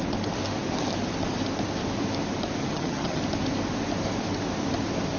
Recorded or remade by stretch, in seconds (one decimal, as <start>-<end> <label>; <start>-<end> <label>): 0.0-2.6 recorded; 2.6-3.2 remade; 3.2-5.2 recorded